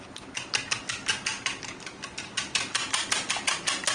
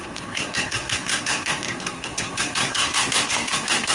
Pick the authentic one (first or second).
first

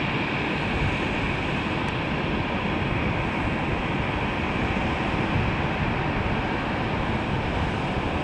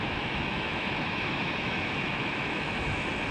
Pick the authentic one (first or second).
first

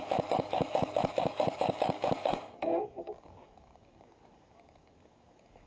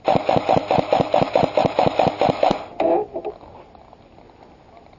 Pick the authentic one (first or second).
second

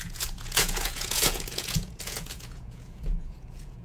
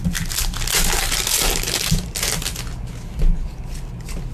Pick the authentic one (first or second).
second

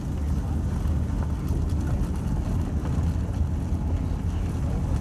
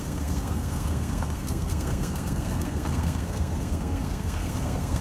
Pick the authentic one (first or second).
first